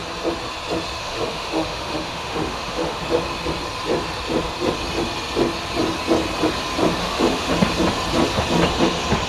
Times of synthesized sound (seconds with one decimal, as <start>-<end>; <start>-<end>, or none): 1.0-3.0; 7.0-7.5